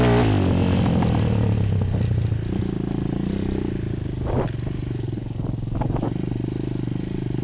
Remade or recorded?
recorded